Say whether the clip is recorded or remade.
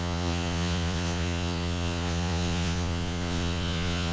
remade